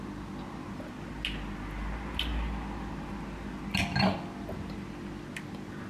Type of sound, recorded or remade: recorded